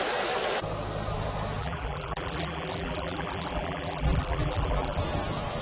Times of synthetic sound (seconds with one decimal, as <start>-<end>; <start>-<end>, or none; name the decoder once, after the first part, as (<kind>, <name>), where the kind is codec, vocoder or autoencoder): 1.6-5.0 (vocoder, BigVGAN v2)